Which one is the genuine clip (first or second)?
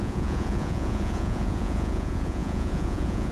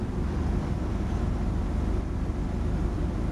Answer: second